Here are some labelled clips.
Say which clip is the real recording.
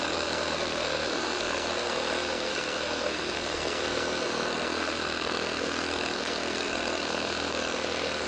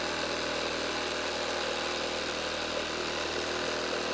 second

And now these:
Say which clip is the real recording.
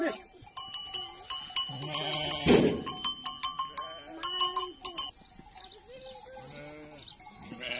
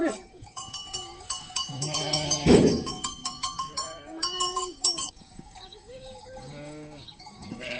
first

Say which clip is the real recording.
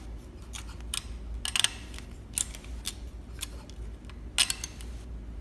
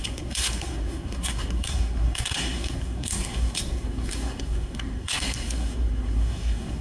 first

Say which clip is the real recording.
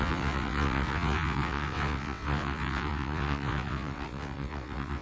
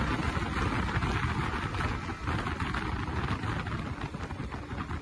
second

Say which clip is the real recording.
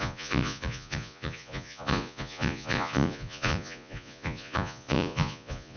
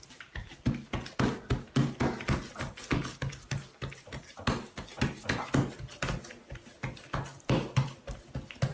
second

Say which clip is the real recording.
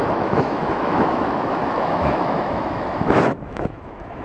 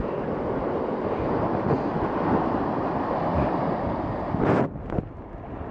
second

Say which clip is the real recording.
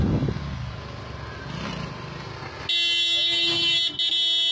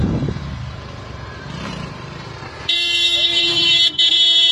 first